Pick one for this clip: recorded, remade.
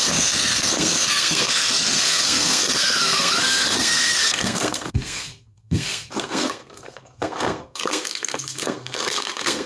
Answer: remade